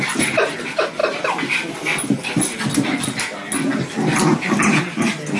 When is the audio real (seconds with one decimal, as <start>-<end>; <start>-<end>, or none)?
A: 0.0-5.4